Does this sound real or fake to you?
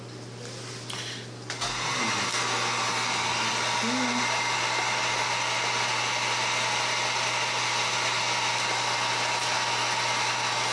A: real